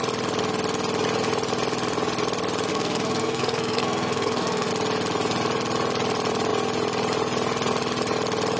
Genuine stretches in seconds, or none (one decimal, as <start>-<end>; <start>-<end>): 0.0-2.7; 4.7-8.6